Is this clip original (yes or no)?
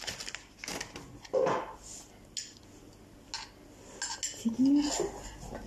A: yes